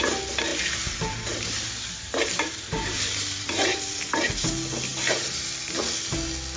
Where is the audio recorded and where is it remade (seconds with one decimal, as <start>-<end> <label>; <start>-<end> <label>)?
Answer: 0.0-0.5 recorded; 0.5-4.5 remade; 4.5-6.6 recorded